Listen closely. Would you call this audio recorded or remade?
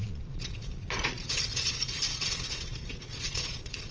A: remade